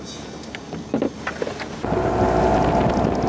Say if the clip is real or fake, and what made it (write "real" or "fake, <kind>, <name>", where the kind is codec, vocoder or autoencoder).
real